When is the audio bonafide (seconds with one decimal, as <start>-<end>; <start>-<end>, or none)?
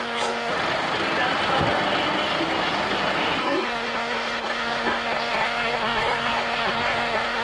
0.5-3.4